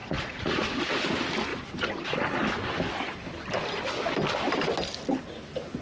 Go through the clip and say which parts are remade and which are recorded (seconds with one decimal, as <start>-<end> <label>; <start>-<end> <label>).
0.0-0.8 remade; 0.8-5.8 recorded